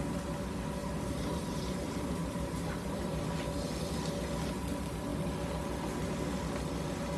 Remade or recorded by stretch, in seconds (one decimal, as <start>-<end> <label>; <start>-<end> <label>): 0.0-0.8 recorded; 0.8-3.2 remade; 3.2-7.2 recorded